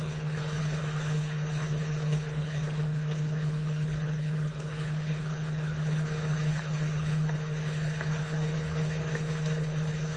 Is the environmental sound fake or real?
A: fake